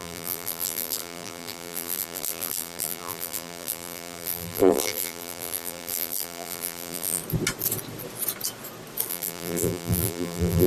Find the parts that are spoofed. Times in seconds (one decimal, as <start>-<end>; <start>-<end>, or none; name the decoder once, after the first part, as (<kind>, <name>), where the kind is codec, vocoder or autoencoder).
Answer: 0.0-7.2 (vocoder, BigVGAN v2); 9.1-10.7